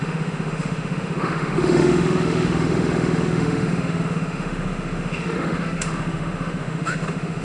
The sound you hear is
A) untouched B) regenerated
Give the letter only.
B